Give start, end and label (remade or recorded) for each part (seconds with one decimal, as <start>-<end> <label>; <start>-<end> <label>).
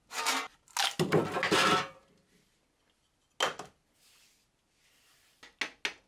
0.0-6.1 recorded